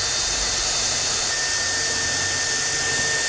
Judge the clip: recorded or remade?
recorded